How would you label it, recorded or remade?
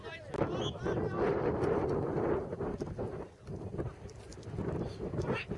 recorded